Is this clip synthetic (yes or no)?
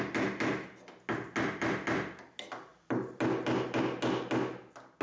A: no